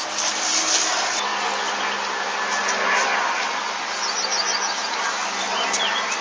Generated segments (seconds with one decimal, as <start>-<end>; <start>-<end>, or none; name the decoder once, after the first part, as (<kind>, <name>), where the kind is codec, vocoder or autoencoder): none